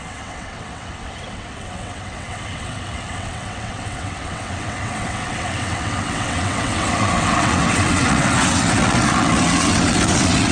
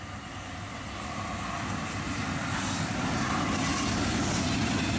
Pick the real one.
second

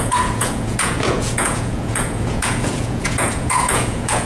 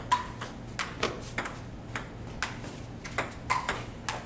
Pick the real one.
second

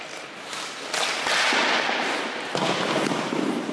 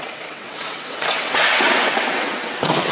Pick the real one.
first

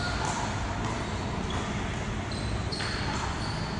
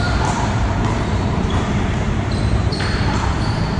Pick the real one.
first